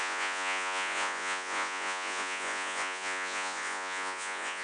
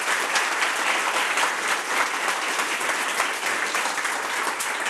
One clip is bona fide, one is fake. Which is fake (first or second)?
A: first